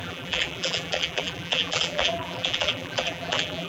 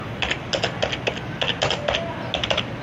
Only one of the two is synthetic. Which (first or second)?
first